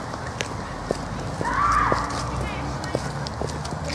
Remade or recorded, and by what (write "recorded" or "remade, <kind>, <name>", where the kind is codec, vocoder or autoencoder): recorded